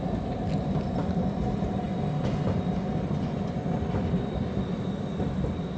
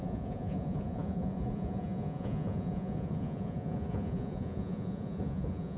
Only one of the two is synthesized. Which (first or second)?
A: second